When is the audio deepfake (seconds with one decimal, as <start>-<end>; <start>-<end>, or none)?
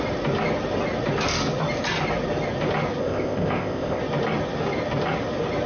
3.0-4.0